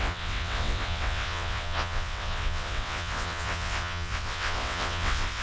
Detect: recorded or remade remade